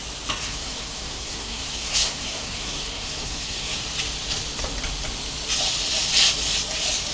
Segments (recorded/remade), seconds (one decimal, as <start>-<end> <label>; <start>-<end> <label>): 0.0-0.4 recorded; 0.4-3.8 remade; 3.8-7.1 recorded

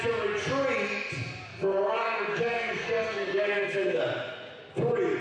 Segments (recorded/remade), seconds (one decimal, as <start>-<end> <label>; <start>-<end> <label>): 0.0-1.5 recorded; 1.5-4.0 remade; 4.0-5.2 recorded

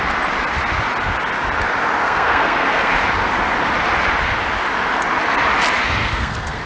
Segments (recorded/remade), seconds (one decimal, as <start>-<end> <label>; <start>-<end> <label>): 0.0-2.0 recorded; 2.0-2.9 remade; 2.9-6.0 recorded; 6.0-6.7 remade

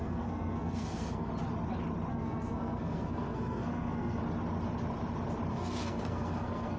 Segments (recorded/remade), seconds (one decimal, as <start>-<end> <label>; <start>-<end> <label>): 0.0-1.3 remade; 1.3-2.1 recorded; 2.1-4.2 remade; 4.2-5.5 recorded; 5.5-6.8 remade

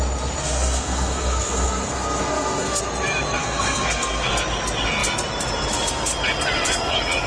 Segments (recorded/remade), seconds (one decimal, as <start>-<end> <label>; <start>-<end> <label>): 0.0-0.4 recorded; 0.4-2.8 remade; 2.8-3.4 recorded; 3.4-4.3 remade; 4.3-7.3 recorded

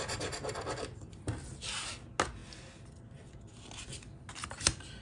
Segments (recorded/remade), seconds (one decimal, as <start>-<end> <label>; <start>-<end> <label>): 0.0-5.0 recorded